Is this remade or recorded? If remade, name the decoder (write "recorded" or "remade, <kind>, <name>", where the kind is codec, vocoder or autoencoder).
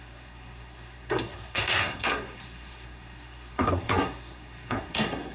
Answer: remade, codec, SNAC